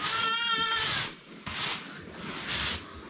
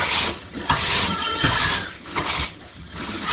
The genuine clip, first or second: first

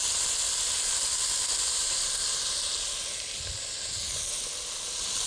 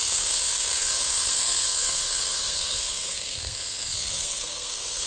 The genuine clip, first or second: first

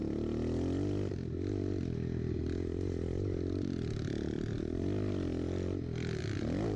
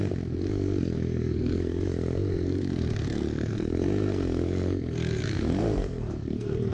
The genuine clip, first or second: first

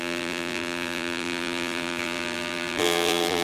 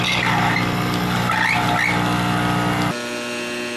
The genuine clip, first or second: second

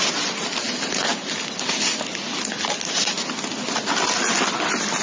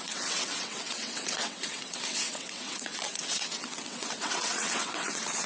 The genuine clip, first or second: first